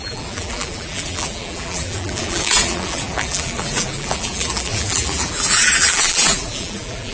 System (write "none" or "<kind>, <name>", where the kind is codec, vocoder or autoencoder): vocoder, BigVGAN v2